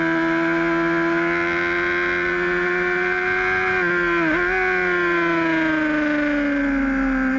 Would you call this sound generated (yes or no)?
no